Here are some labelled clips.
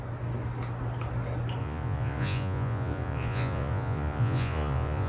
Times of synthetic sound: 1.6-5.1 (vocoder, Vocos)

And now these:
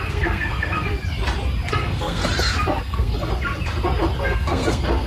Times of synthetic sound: 0.0-0.9 (codec, SNAC); 1.7-2.2; 2.8-3.3; 4.2-5.1

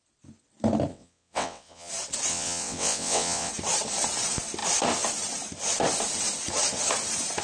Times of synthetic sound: 0.9-1.9 (vocoder, WaveNeXt); 2.3-3.5